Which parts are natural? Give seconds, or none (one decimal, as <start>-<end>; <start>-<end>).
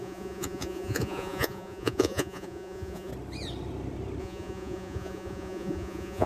3.1-4.2